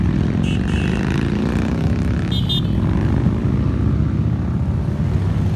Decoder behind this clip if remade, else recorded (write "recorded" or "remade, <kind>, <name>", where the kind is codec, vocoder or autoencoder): recorded